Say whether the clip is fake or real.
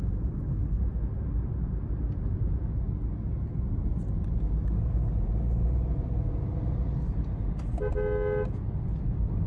real